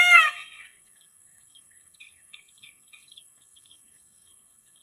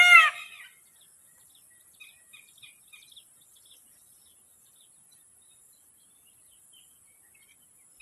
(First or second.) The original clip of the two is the second